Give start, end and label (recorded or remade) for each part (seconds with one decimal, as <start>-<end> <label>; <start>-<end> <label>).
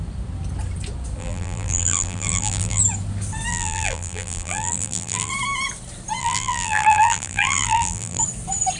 0.0-1.2 recorded; 1.2-2.8 remade; 2.8-3.5 recorded; 3.5-5.3 remade; 5.3-6.2 recorded; 6.2-8.2 remade; 8.2-8.8 recorded